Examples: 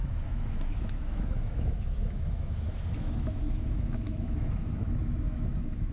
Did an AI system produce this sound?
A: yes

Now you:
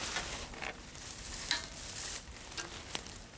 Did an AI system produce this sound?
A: no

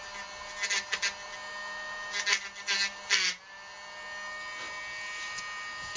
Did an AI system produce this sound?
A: no